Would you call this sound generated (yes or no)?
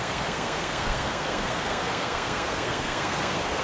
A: yes